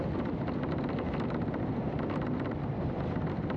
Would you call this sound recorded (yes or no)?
no